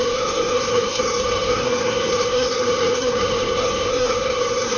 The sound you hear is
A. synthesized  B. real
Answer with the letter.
A